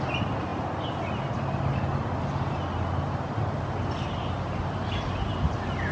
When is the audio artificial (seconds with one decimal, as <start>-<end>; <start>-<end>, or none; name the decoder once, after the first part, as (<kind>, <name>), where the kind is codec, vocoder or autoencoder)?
none